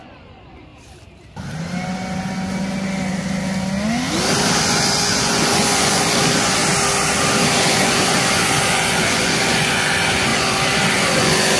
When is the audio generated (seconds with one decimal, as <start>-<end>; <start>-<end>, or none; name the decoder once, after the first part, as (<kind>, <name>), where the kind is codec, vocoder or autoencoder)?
0.0-0.7 (vocoder, Vocos); 4.6-6.6; 7.6-11.6